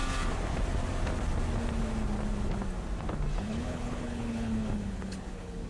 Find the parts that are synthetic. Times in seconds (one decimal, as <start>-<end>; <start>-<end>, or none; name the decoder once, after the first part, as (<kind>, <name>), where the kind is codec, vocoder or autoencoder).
3.4-5.7 (codec, HILCodec)